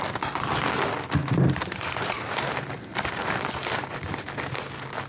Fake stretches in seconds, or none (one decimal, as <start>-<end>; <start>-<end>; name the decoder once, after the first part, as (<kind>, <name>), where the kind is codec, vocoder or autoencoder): 1.2-4.3 (vocoder, BigVGAN v2)